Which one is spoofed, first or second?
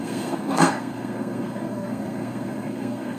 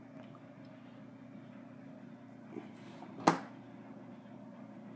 first